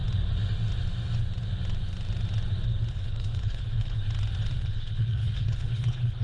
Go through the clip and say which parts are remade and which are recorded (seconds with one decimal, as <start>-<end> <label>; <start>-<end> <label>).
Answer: 0.0-2.9 recorded; 2.9-4.0 remade; 4.0-4.6 recorded; 4.6-6.2 remade